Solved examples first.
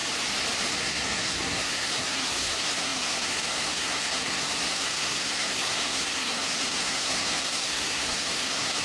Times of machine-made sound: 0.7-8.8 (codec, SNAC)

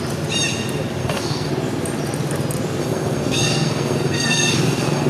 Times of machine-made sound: 1.0-1.5 (codec, SNAC); 2.8-5.1

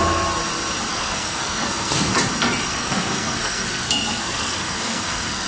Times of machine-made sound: 0.9-2.1 (codec, SNAC); 2.7-5.5